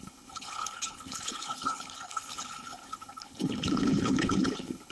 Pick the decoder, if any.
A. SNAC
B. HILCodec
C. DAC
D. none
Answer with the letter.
B